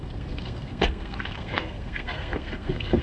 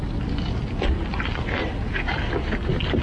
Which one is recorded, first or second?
second